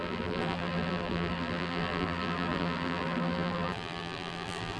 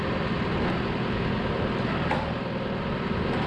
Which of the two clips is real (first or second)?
second